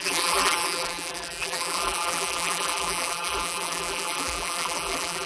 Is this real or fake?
fake